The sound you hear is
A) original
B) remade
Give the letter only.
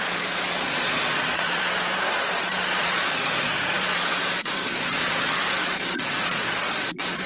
B